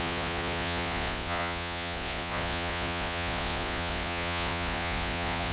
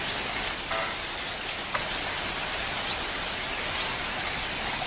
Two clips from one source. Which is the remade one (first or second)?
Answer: first